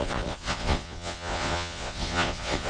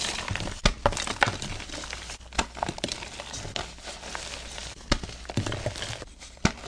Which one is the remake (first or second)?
first